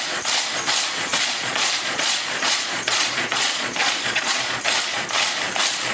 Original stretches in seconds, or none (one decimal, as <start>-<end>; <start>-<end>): 0.0-1.1; 4.6-5.9